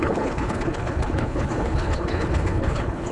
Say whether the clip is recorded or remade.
remade